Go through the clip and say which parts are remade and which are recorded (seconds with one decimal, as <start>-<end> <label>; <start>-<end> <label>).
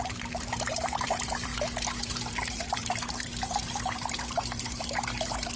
0.0-1.5 remade; 1.5-2.0 recorded; 2.0-5.6 remade